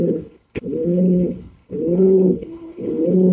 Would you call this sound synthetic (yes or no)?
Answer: yes